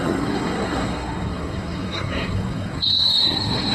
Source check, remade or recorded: remade